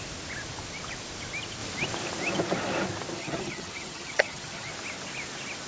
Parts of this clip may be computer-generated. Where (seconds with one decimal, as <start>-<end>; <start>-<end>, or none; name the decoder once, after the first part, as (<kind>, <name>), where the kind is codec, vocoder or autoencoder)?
3.2-4.7 (vocoder, HiFi-GAN)